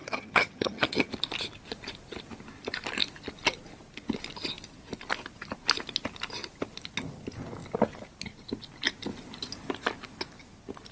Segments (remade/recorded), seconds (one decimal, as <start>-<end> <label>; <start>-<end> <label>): 0.0-1.1 remade; 1.1-10.9 recorded